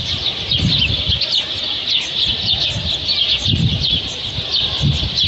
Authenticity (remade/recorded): recorded